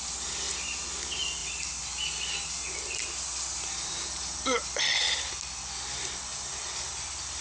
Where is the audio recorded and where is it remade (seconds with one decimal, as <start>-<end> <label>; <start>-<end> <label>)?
0.0-7.4 recorded